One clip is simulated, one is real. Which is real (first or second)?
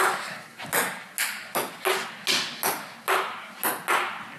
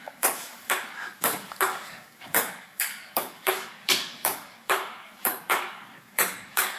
first